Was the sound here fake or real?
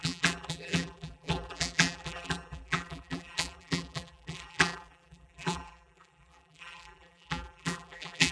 fake